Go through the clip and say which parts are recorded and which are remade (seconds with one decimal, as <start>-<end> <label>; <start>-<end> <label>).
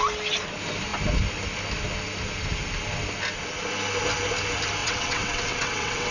0.0-4.8 recorded; 4.8-6.1 remade